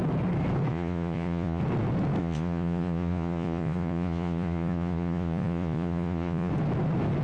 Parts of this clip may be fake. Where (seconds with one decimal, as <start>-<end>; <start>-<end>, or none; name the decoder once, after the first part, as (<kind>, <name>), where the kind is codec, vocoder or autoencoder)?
0.7-1.6 (vocoder, Vocos); 2.2-6.5